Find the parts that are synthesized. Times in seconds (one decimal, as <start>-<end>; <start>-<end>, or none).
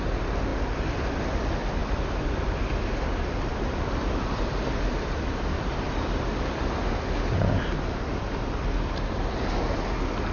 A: 0.5-1.3; 1.8-2.7; 3.5-6.6